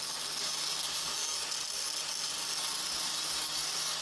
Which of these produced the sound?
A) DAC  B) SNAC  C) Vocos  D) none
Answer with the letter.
D